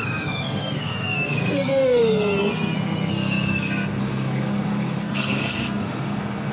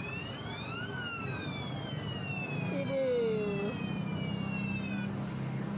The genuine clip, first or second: second